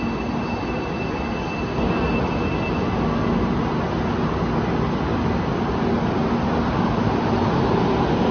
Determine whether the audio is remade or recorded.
recorded